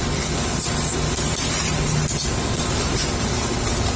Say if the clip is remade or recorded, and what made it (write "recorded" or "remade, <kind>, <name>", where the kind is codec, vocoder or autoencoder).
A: recorded